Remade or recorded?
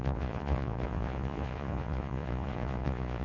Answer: remade